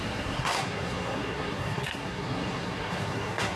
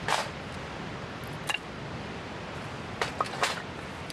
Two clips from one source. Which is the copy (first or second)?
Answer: first